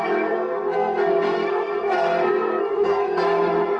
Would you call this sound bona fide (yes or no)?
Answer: no